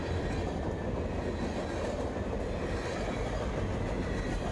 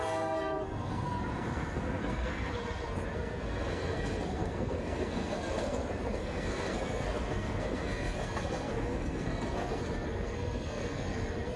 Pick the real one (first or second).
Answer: first